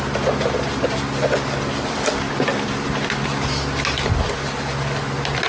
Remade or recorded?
recorded